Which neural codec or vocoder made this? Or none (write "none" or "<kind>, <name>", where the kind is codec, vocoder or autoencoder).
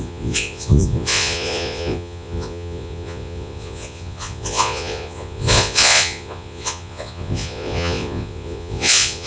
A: vocoder, Vocos